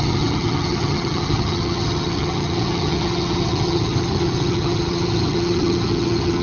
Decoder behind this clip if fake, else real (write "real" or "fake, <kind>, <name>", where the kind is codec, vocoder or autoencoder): fake, vocoder, HiFi-GAN